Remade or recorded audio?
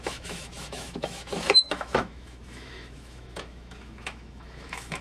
remade